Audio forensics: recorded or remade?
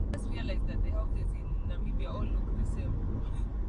recorded